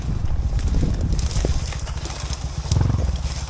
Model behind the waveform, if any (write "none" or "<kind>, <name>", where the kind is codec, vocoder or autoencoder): none